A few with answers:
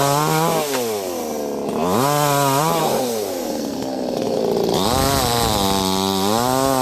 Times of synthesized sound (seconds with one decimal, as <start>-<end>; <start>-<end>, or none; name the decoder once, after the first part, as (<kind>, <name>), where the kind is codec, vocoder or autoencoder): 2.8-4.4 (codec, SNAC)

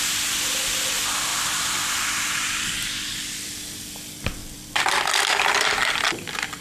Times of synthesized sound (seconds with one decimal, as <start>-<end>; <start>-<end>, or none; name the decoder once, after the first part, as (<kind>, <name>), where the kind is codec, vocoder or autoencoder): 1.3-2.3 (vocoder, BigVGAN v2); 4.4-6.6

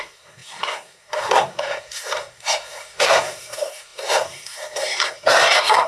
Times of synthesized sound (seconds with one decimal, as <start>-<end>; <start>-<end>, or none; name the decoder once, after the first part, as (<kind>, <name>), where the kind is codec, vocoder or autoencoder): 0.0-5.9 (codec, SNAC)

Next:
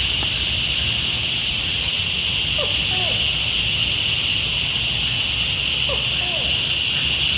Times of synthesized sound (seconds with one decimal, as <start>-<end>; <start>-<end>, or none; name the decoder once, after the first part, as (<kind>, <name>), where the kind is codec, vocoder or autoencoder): 1.4-2.2 (vocoder, Vocos)

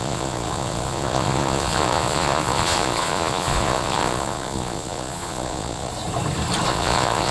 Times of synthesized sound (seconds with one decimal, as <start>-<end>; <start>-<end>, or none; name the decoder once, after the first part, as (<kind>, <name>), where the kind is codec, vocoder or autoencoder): 0.0-5.9 (vocoder, Vocos); 6.7-7.3

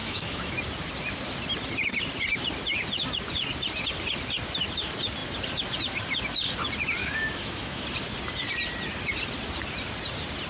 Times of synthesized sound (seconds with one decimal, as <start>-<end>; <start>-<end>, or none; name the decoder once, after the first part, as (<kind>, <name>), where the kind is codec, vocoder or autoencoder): 0.0-0.6 (autoencoder, DAC-VAE); 7.0-7.8

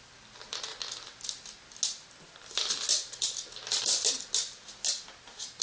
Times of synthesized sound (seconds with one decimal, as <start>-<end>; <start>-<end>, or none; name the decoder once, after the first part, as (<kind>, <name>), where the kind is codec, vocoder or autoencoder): none